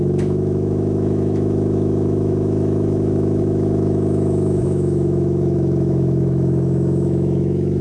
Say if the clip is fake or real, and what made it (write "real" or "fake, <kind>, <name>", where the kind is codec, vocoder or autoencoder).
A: fake, autoencoder, DAC-VAE